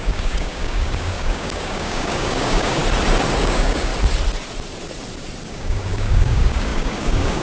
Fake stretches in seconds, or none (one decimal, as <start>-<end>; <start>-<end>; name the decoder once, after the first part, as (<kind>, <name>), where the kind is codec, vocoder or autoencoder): 0.0-2.8 (codec, DAC); 3.4-3.9; 5.5-7.4